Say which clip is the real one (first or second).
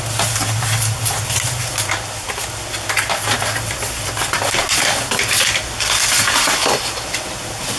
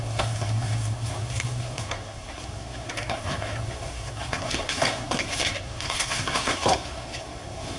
first